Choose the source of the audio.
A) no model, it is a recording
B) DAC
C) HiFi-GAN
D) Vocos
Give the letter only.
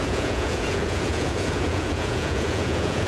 D